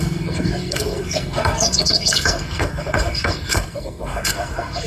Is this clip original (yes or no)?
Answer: no